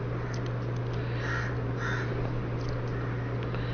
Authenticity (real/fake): real